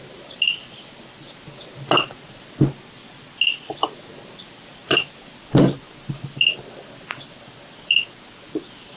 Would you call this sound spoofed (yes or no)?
no